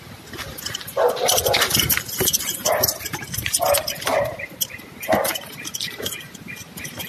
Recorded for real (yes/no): yes